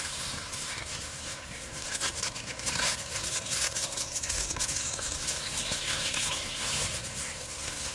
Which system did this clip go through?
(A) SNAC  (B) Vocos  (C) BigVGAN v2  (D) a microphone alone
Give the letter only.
A